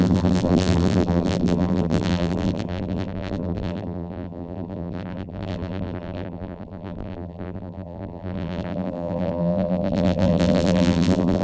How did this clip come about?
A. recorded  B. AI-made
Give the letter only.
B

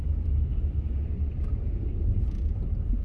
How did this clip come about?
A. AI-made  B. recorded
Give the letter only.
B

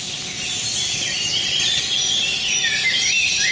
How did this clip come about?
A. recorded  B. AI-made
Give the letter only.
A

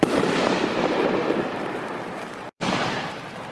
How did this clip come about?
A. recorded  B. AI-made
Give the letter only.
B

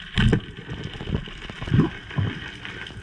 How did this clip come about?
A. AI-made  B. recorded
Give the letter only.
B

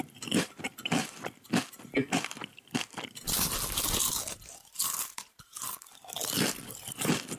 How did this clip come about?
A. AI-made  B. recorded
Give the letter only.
A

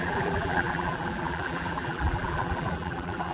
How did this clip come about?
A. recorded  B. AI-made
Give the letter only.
B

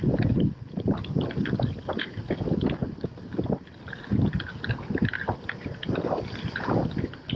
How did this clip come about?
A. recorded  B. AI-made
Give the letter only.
A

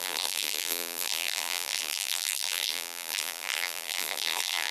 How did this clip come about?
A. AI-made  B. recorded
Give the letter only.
A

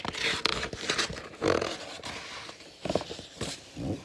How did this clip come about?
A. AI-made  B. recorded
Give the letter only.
B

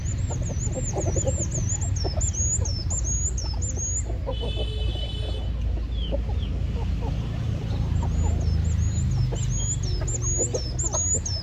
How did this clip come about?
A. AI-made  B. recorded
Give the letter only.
B